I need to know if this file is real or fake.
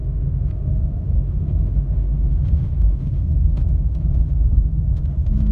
fake